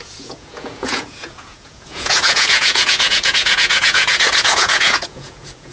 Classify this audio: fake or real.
fake